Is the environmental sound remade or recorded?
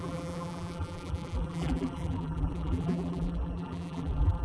remade